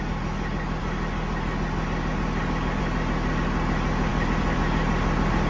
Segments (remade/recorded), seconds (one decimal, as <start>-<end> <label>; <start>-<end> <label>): 0.0-4.1 recorded; 4.1-4.6 remade; 4.6-5.5 recorded